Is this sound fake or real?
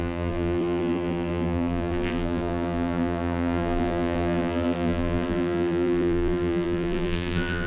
fake